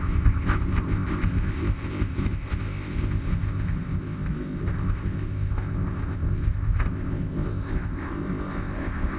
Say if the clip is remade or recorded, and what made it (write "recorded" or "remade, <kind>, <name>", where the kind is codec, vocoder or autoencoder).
remade, codec, ZipCodec